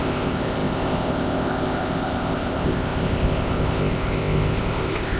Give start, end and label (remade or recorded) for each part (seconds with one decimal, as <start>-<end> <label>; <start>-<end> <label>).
0.0-5.2 remade